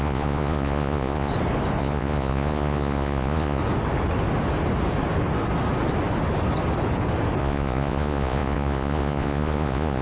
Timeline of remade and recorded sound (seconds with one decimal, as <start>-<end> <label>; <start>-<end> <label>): 0.0-1.3 remade; 1.3-1.8 recorded; 1.8-3.6 remade; 3.6-7.4 recorded; 7.4-10.0 remade